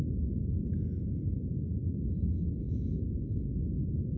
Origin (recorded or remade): recorded